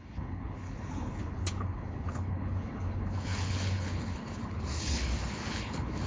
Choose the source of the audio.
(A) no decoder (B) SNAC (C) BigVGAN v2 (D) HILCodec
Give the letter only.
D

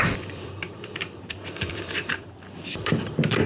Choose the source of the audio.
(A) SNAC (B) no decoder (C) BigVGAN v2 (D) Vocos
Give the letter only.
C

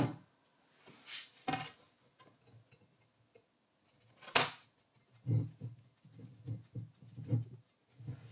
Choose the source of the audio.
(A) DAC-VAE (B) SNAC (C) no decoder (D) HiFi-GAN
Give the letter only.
C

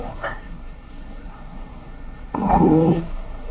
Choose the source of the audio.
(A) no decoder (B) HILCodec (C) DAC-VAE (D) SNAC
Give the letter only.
D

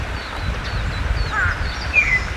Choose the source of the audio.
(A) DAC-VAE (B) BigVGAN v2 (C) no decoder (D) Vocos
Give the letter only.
C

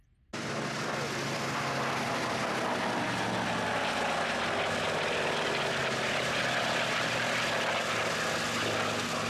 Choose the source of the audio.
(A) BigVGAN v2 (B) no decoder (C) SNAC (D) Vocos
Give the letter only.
B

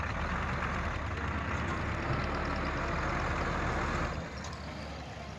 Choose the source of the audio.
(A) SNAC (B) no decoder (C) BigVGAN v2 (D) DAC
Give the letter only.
B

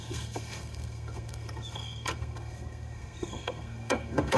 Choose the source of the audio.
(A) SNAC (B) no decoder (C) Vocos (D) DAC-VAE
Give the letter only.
A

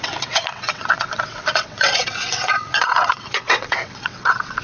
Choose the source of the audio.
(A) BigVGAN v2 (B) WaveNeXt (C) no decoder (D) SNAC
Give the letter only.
B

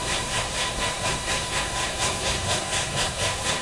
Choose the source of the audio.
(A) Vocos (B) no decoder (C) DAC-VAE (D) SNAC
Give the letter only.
D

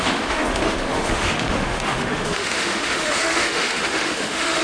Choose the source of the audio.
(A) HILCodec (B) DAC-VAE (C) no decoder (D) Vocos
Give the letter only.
B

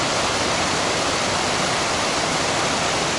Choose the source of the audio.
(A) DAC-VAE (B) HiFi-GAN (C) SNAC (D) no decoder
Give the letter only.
D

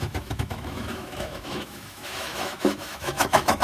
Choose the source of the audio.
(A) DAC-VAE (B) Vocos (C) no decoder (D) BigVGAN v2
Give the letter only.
A